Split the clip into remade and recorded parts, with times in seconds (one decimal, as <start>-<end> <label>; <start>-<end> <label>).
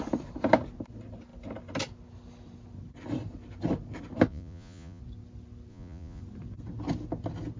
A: 0.0-4.3 recorded; 4.3-5.0 remade; 5.0-5.7 recorded; 5.7-6.2 remade; 6.2-7.6 recorded